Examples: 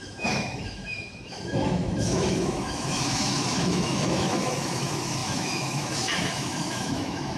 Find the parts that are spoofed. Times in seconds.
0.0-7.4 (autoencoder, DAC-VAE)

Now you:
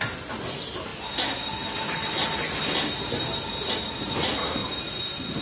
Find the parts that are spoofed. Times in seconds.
none

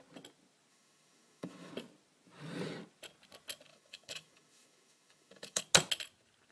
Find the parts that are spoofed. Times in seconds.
0.7-1.7 (autoencoder, DAC-VAE); 3.7-5.6

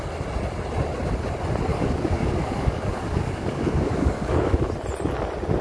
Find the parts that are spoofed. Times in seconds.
1.7-4.7 (codec, DAC)

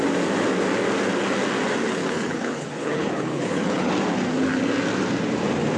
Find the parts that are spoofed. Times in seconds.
2.0-3.9 (codec, HILCodec)

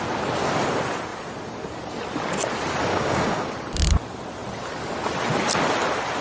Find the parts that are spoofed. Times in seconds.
2.9-3.5 (codec, DAC)